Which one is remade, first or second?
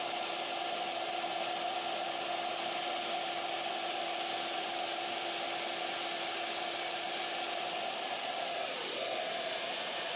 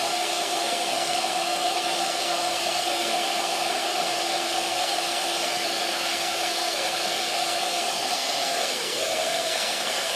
second